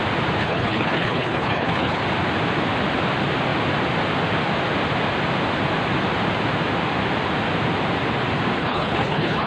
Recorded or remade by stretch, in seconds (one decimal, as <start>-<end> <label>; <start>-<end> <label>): 0.0-0.4 recorded; 0.4-2.0 remade; 2.0-8.6 recorded; 8.6-9.5 remade